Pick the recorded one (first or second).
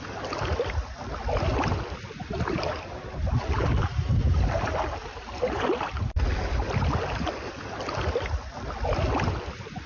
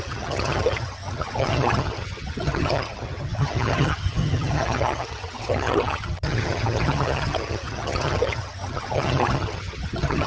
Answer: first